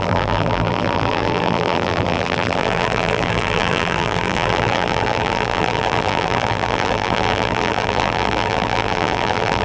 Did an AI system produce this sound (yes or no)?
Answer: yes